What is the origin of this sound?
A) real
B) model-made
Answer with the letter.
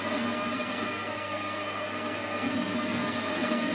B